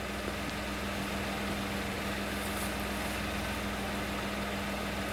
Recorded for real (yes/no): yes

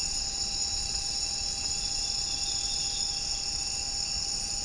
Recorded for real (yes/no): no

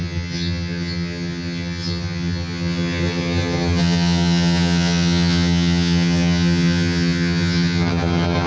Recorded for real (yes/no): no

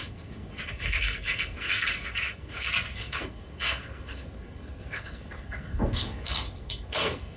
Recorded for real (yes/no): no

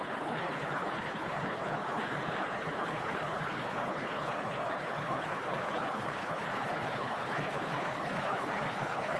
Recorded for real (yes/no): no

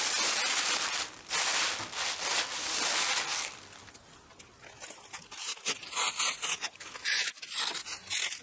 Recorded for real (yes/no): yes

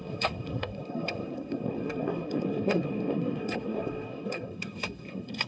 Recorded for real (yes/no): no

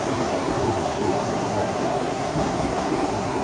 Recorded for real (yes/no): no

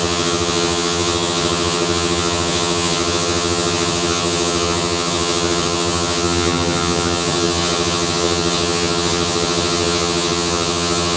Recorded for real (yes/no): no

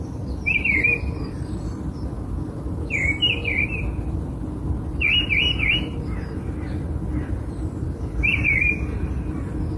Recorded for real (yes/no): yes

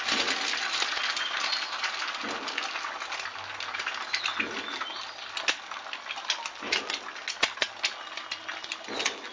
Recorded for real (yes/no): yes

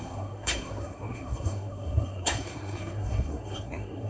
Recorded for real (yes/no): no